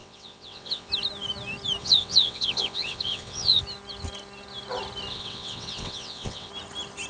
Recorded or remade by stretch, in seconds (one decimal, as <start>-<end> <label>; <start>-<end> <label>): 0.0-0.9 remade; 0.9-1.8 recorded; 1.8-3.6 remade; 3.6-5.1 recorded; 5.1-6.5 remade; 6.5-7.1 recorded